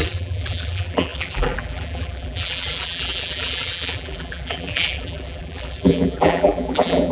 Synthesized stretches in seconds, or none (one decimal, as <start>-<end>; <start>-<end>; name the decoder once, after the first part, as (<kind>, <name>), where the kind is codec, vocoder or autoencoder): 0.0-7.1 (vocoder, BigVGAN v2)